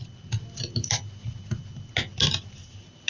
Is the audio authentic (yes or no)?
yes